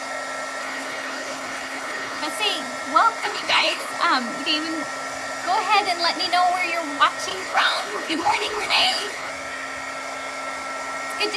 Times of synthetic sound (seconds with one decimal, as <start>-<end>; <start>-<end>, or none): 0.6-2.2; 3.2-3.9; 7.3-9.3